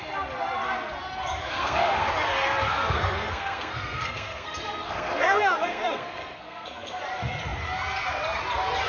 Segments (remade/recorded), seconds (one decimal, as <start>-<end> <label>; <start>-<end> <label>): 0.0-1.4 recorded; 1.4-2.1 remade; 2.1-2.7 recorded; 2.7-7.0 remade; 7.0-8.9 recorded